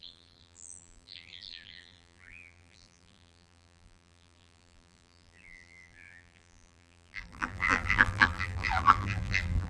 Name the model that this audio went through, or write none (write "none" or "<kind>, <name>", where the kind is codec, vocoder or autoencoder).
vocoder, BigVGAN v2